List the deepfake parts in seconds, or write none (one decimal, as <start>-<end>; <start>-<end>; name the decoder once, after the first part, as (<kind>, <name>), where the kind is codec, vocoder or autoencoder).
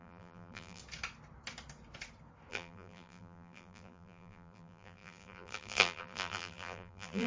0.0-0.8 (vocoder, BigVGAN v2); 2.5-7.3